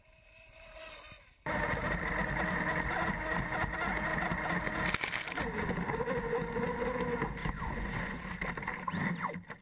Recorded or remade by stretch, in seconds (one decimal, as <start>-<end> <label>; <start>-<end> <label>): 0.0-7.4 recorded; 7.4-8.2 remade; 8.2-9.6 recorded